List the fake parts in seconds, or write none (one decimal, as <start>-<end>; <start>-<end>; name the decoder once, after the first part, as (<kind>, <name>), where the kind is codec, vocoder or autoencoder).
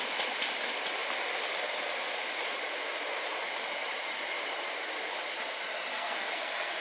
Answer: 5.9-6.8 (codec, SNAC)